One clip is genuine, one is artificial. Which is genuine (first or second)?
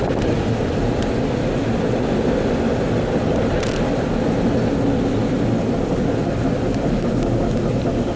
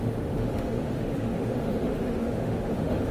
first